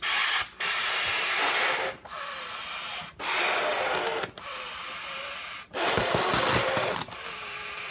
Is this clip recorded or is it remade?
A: recorded